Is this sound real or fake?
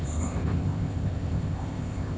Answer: fake